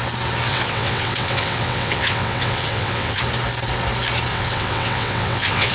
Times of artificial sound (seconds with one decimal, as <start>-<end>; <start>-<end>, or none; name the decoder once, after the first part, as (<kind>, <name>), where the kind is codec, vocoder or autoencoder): 0.5-3.2 (vocoder, WaveNeXt); 4.3-5.7